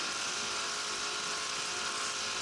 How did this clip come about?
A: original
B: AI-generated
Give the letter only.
A